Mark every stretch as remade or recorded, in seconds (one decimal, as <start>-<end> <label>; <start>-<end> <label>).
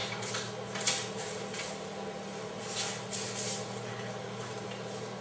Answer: 0.0-5.2 recorded